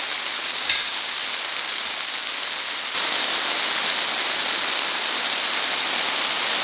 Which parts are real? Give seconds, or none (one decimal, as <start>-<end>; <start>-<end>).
0.0-0.4; 1.1-6.6